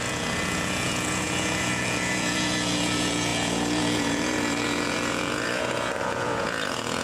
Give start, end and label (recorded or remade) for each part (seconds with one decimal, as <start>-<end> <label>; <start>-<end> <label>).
0.0-7.0 remade